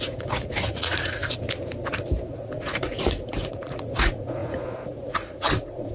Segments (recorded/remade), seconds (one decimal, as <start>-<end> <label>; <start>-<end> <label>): 0.0-1.2 remade; 1.2-2.3 recorded; 2.3-5.9 remade